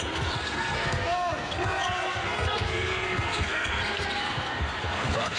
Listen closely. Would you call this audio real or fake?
fake